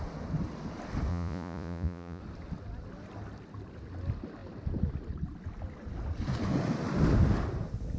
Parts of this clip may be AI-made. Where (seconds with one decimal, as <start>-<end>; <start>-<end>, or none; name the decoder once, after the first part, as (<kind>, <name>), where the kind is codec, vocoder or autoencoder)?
1.1-2.2 (vocoder, Vocos)